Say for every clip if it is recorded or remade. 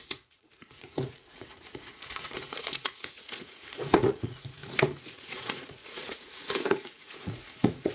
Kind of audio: remade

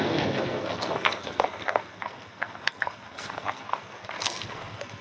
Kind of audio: remade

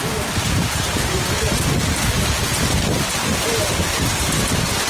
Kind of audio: recorded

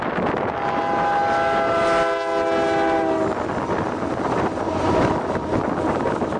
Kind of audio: recorded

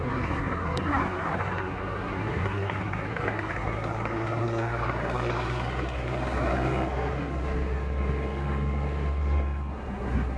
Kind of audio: remade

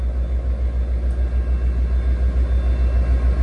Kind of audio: recorded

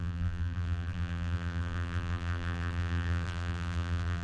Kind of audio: remade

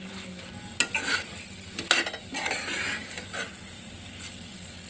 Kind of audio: recorded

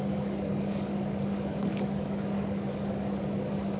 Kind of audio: remade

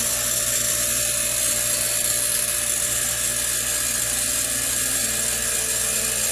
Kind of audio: recorded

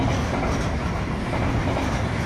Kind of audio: recorded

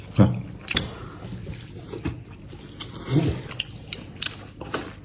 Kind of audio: recorded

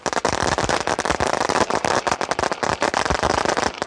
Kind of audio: remade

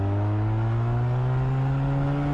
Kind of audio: recorded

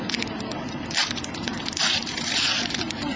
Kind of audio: remade